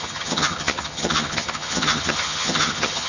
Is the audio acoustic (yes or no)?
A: no